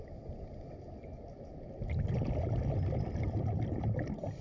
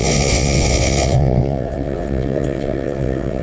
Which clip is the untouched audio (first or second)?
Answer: first